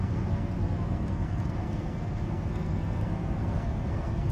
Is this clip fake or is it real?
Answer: fake